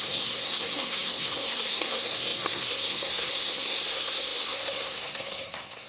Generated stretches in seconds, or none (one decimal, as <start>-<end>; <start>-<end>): 0.0-5.9